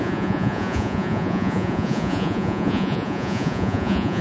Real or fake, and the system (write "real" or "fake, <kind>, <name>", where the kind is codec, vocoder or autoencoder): fake, vocoder, Vocos